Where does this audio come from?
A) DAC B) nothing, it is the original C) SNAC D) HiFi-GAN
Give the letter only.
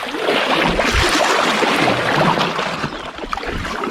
B